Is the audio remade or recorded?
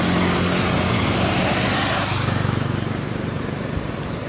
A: recorded